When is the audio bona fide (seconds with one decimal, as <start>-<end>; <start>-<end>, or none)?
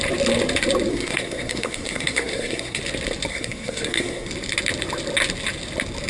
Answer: 0.0-0.9; 2.8-3.3; 4.3-6.1